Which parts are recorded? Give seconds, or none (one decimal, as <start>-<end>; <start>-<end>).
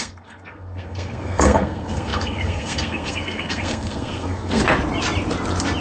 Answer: 4.6-5.8